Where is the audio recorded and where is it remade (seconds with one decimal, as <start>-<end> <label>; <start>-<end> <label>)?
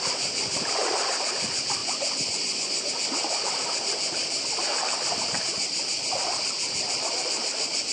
0.0-1.8 recorded; 1.8-2.9 remade; 2.9-7.9 recorded